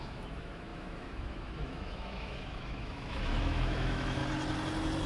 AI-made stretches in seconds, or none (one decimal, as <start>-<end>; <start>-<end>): 0.0-4.2